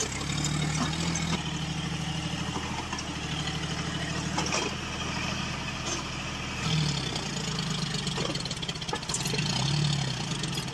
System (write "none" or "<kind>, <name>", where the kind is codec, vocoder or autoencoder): none